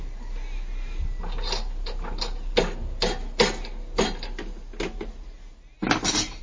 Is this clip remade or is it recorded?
recorded